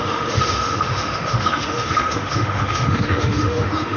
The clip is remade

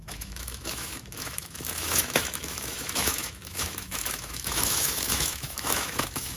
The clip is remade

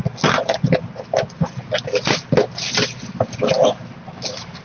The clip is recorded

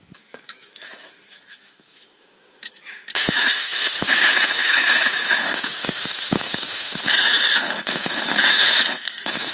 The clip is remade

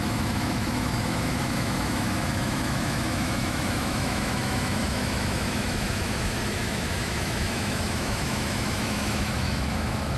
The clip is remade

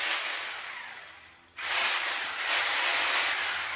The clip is recorded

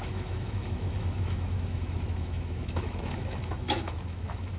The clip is remade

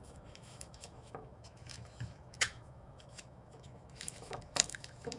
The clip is remade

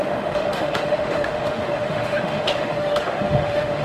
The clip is remade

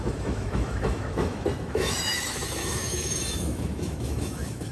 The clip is remade